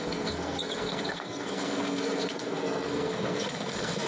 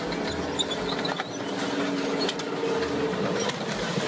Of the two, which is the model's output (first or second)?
first